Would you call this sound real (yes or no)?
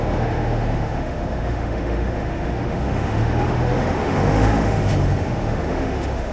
no